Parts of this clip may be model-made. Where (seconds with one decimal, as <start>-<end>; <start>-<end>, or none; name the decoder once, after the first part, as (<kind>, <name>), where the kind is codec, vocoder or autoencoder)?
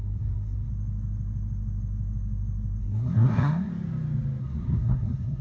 0.0-0.7 (codec, SNAC); 2.8-3.7; 4.4-5.4